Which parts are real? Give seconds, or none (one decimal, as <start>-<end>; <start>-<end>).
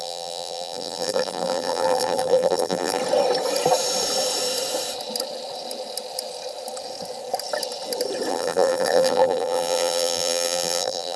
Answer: 3.0-8.3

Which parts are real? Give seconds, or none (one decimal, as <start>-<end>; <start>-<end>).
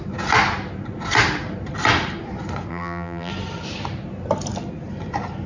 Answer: 0.0-2.7; 3.3-5.5